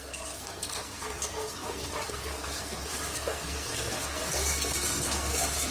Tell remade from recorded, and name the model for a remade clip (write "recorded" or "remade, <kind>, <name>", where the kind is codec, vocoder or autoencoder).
remade, codec, SNAC